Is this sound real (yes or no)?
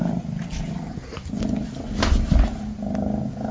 yes